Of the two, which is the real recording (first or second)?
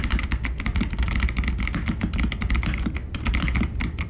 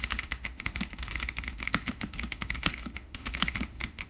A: first